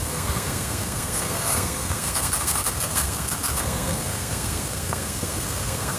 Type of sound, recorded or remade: remade